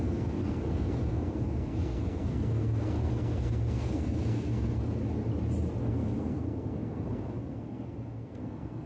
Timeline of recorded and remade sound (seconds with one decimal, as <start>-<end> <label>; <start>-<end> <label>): 0.0-5.0 remade; 5.0-5.8 recorded; 5.8-8.9 remade